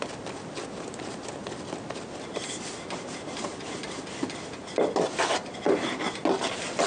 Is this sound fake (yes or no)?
no